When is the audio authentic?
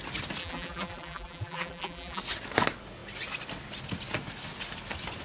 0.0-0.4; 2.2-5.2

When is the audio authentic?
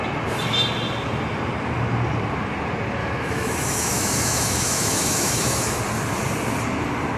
0.0-3.0; 5.8-7.2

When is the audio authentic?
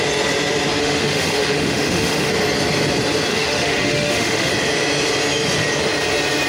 0.0-0.8; 2.3-3.3; 4.5-6.5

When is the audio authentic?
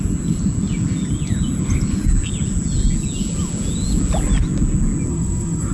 0.0-5.1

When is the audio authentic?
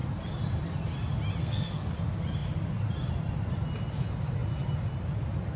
0.0-1.4; 1.9-5.6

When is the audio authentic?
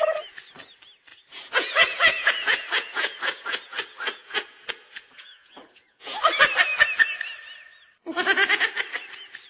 0.0-1.1; 6.2-9.5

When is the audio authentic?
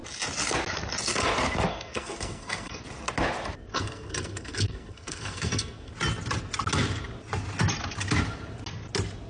0.0-1.7; 2.8-3.7; 5.9-9.3